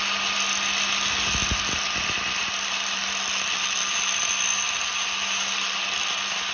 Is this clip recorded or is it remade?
recorded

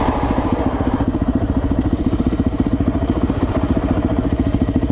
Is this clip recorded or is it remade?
recorded